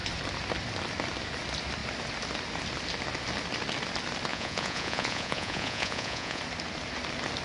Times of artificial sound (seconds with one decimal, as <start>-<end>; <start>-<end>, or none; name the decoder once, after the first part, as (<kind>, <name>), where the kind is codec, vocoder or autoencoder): 4.3-6.4 (vocoder, Vocos)